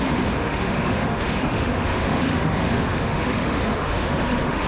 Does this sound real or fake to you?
fake